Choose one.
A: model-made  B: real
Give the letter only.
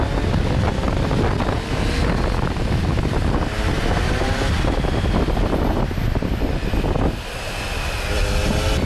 B